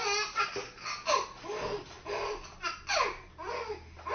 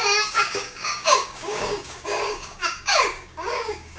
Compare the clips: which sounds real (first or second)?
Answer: first